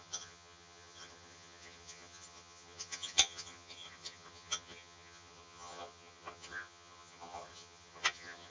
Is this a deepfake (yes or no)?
yes